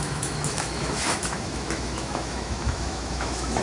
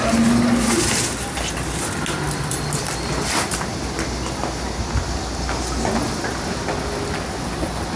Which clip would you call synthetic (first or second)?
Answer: first